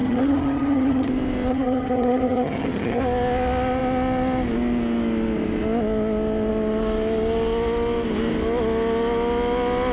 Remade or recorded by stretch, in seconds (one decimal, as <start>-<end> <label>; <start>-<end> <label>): 0.0-1.1 remade; 1.1-1.5 recorded; 1.5-3.0 remade; 3.0-9.9 recorded